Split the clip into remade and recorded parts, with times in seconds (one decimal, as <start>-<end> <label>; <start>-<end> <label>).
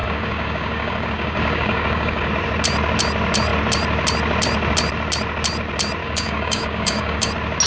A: 0.0-2.3 remade; 2.3-6.0 recorded; 6.0-7.3 remade; 7.3-7.7 recorded